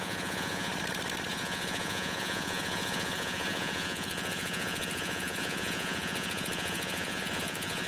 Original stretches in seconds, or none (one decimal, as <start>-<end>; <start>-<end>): 0.7-1.3